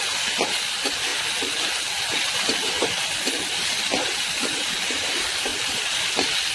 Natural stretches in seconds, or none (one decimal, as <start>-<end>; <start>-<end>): 0.0-5.5; 6.1-6.5